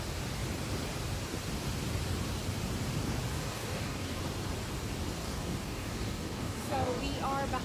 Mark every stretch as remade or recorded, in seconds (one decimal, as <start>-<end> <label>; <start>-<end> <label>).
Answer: 0.0-3.3 recorded; 3.3-4.2 remade; 4.2-5.2 recorded; 5.2-7.0 remade; 7.0-7.6 recorded